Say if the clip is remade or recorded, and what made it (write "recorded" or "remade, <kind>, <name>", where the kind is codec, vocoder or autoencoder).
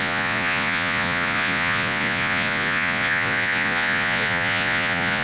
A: remade, vocoder, Vocos